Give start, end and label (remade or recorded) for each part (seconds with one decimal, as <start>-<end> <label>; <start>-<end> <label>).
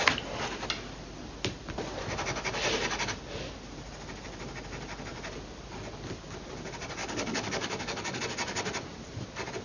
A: 0.0-7.0 recorded; 7.0-8.2 remade; 8.2-9.6 recorded